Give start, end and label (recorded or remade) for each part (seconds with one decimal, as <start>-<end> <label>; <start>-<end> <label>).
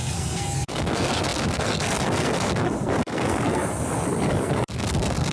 0.0-5.3 remade